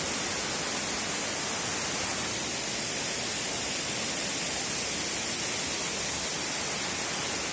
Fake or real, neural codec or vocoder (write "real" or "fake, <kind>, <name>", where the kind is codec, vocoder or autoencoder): real